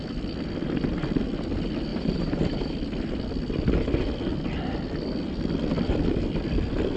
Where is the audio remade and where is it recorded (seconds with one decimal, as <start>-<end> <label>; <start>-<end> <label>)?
0.0-1.9 recorded; 1.9-2.7 remade; 2.7-7.0 recorded